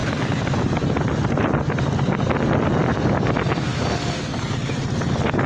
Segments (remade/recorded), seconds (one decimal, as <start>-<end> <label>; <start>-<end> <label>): 0.0-2.6 recorded; 2.6-3.7 remade; 3.7-5.5 recorded